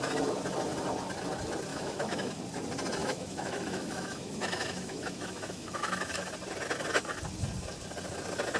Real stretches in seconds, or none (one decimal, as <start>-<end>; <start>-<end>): 0.0-1.7; 2.4-3.0; 6.3-8.6